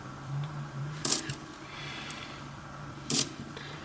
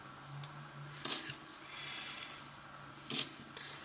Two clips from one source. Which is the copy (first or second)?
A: first